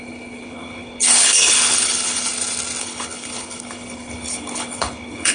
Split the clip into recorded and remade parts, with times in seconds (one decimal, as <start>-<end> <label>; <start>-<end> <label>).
0.0-2.3 remade; 2.3-2.8 recorded; 2.8-5.3 remade

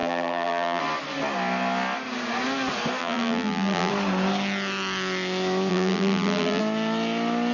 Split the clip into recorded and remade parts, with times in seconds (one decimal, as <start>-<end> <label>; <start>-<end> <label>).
0.0-0.8 remade; 0.8-3.0 recorded; 3.0-3.9 remade; 3.9-5.7 recorded; 5.7-6.6 remade; 6.6-7.5 recorded

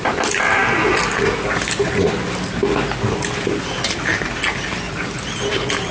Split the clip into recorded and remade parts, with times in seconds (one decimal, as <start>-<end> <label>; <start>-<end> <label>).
0.0-5.9 recorded

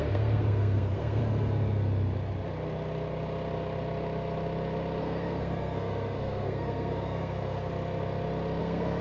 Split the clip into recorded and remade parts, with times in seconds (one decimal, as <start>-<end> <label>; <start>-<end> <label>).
0.0-1.2 remade; 1.2-5.0 recorded; 5.0-7.7 remade; 7.7-8.6 recorded; 8.6-9.0 remade

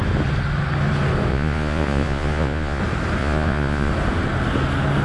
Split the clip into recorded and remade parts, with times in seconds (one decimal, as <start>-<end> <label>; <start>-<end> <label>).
0.0-1.3 recorded; 1.3-2.8 remade; 2.8-3.2 recorded; 3.2-3.9 remade; 3.9-5.0 recorded